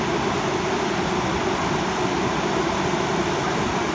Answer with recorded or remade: recorded